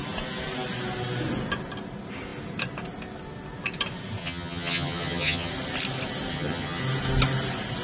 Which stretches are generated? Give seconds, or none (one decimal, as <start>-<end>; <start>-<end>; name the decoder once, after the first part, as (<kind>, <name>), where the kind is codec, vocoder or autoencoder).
4.2-5.5 (vocoder, HiFi-GAN); 6.3-6.8